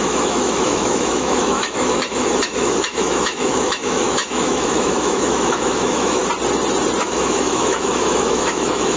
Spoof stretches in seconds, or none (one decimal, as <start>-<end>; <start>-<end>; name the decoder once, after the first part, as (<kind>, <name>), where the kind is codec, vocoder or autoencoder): 0.0-6.2 (autoencoder, DAC-VAE); 7.0-9.0